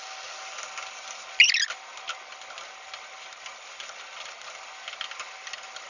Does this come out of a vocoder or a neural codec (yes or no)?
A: no